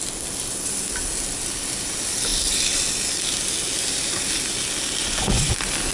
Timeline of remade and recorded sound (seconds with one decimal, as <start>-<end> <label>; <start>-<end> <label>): 0.0-5.0 recorded; 5.0-5.5 remade; 5.5-5.9 recorded